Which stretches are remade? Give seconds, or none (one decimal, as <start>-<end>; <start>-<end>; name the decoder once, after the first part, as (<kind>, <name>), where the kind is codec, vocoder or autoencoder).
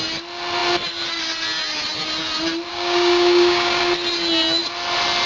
2.7-3.8 (codec, DAC)